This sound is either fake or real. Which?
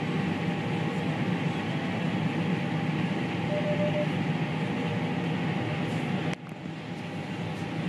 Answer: real